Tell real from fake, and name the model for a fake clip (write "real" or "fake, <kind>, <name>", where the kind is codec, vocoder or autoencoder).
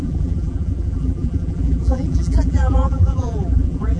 fake, vocoder, BigVGAN v2